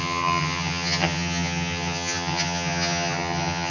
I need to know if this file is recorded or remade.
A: remade